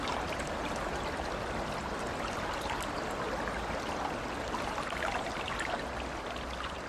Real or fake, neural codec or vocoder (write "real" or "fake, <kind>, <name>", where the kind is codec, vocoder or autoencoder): real